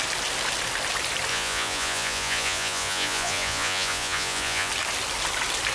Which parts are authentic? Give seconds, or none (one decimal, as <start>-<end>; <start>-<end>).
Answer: 0.0-1.3; 4.7-5.7

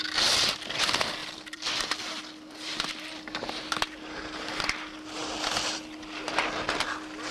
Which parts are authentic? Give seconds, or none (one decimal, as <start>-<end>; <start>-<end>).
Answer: 0.0-1.2; 2.9-5.2; 5.8-7.3

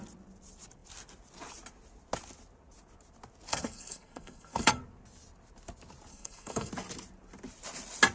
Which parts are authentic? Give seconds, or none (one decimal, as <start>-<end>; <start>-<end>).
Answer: 0.0-3.5; 4.8-6.1; 6.7-8.1

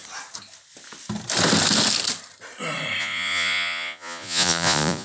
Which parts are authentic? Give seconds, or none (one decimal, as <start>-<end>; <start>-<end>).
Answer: 0.0-3.0

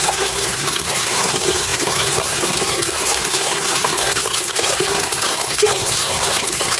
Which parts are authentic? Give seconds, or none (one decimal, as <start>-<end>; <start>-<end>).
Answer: none

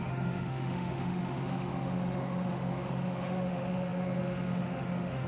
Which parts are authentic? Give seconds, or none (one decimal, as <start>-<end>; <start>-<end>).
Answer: none

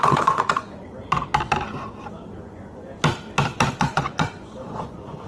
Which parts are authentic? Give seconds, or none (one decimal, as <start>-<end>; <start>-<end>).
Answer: 1.0-2.4; 2.9-3.8

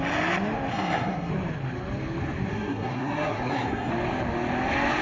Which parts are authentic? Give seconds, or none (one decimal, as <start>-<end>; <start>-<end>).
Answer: 0.0-0.7; 1.3-2.5; 3.9-5.0